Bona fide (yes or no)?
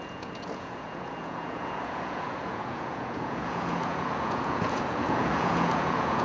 no